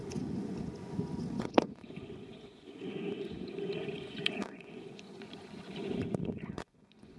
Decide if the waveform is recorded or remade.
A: remade